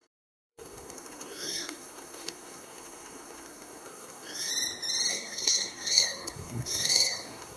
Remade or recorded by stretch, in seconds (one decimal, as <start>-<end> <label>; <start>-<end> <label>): 0.0-4.5 remade; 4.5-5.1 recorded; 5.1-7.6 remade